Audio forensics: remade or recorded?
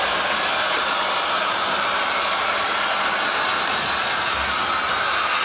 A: recorded